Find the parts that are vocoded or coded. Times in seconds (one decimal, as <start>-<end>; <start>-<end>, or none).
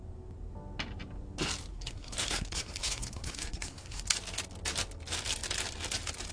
1.7-4.0